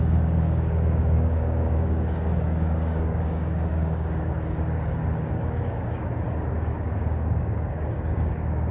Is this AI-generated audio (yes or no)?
yes